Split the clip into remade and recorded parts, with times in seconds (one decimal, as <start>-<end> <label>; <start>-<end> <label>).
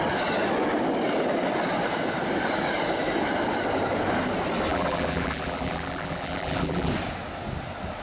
0.0-4.7 recorded; 4.7-6.9 remade; 6.9-8.0 recorded